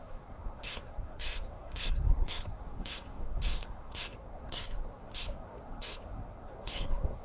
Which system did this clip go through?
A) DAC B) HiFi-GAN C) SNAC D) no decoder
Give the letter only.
C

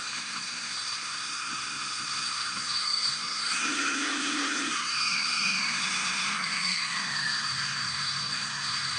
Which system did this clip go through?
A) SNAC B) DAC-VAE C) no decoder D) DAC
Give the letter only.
A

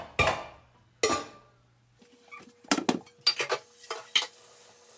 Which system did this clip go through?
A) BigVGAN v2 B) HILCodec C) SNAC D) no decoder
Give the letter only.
D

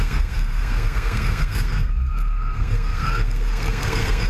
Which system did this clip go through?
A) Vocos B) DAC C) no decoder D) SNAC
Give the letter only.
D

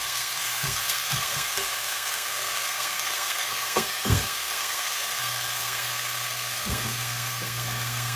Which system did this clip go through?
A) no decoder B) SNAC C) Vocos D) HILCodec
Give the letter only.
B